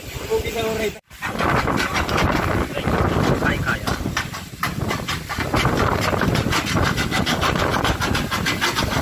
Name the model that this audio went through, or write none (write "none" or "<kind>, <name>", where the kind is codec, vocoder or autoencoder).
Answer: vocoder, BigVGAN v2